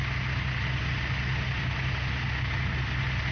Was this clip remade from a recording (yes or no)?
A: no